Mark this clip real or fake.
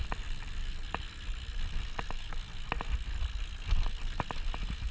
real